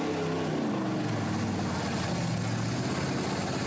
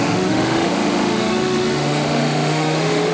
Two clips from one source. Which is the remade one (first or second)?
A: second